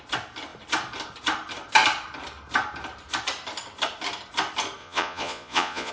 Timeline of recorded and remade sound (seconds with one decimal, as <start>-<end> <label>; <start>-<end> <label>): 0.0-4.8 recorded; 4.8-5.9 remade